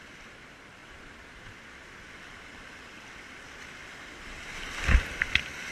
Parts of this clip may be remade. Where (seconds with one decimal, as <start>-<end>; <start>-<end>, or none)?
none